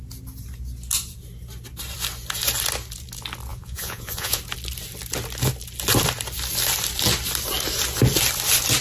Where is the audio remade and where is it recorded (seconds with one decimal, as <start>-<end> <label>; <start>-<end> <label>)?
0.0-3.5 recorded; 3.5-4.4 remade; 4.4-8.8 recorded